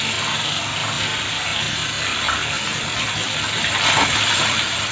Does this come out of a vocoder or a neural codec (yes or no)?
no